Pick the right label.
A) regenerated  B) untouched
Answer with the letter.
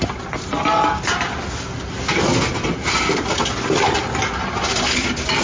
B